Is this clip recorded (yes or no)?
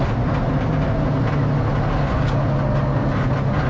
yes